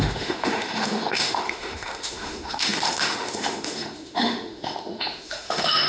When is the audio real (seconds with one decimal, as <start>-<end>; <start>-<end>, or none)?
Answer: none